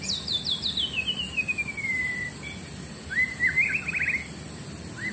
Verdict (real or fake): real